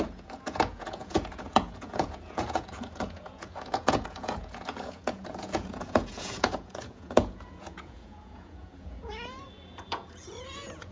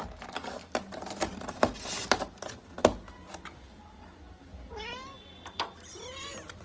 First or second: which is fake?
first